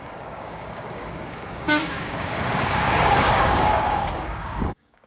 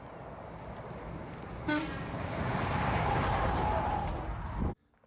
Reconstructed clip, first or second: first